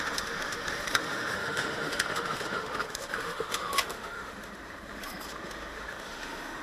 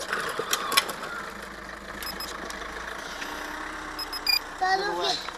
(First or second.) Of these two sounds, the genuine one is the second